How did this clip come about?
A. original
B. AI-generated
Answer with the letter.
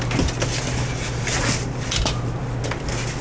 A